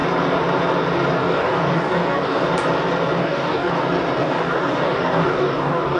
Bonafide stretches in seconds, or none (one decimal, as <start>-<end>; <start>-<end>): 0.0-1.2; 2.5-3.2; 3.8-4.2